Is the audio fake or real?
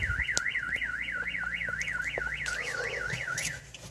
real